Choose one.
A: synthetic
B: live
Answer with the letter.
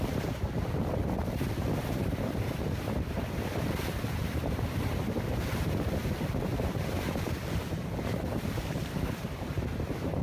A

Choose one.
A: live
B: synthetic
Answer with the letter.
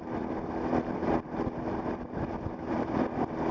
B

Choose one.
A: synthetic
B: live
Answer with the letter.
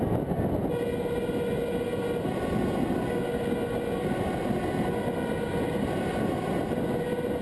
B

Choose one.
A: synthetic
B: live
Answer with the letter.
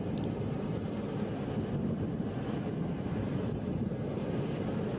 A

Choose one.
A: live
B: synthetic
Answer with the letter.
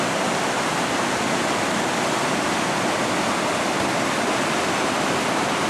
A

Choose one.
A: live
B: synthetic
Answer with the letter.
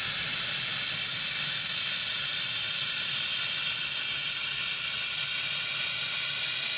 A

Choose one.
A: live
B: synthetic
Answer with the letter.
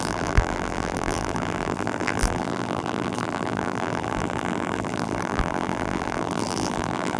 B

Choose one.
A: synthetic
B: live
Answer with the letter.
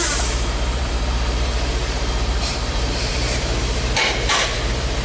A